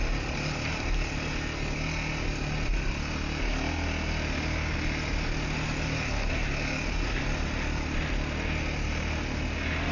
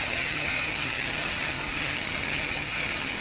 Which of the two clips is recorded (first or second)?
first